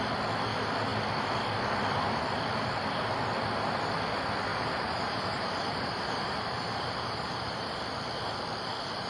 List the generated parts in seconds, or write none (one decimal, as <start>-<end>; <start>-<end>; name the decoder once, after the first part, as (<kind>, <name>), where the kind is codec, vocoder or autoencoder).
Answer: 4.5-7.8 (vocoder, BigVGAN v2)